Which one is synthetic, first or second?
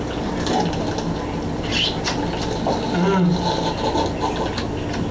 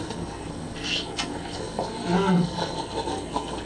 second